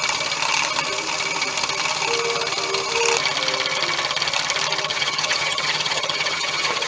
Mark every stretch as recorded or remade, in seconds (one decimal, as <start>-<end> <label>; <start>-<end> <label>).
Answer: 0.0-4.9 recorded; 4.9-6.9 remade